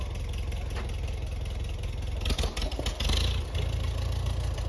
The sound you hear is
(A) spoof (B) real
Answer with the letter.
B